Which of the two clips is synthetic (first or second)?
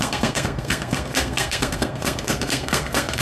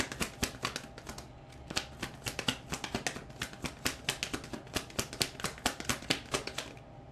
first